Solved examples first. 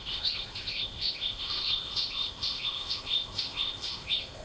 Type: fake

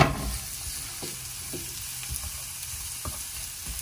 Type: real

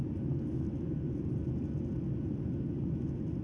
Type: real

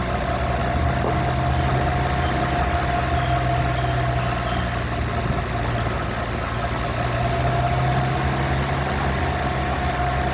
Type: real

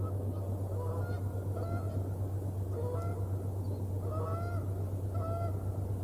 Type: real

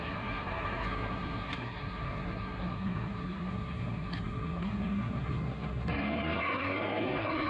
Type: fake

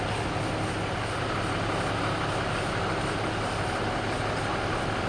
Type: real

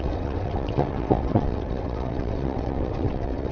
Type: fake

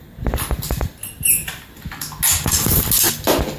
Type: real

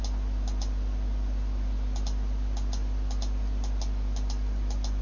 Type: real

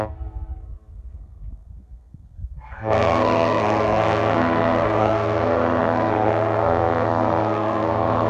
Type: fake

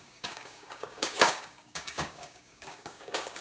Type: fake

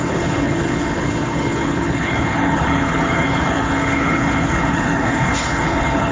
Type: fake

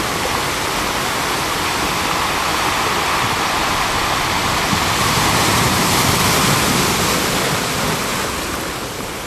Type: real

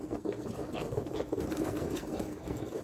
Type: fake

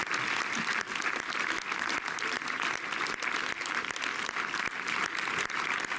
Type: real